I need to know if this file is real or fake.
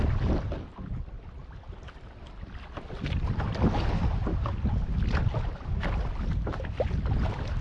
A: real